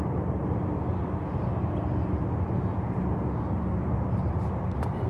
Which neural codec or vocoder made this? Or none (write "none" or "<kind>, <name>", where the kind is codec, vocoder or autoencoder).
none